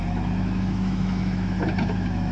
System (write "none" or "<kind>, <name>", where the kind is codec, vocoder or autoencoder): autoencoder, DAC-VAE